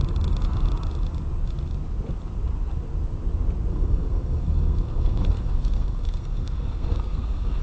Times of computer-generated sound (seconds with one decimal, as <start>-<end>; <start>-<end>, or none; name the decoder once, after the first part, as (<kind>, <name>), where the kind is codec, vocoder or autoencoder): 3.7-7.6 (codec, SNAC)